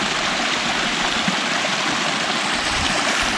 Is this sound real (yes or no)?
yes